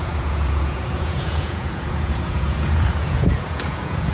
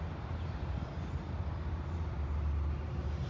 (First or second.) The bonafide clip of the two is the second